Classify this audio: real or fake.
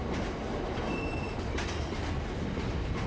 real